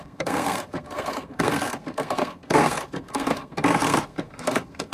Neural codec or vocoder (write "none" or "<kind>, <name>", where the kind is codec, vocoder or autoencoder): codec, SNAC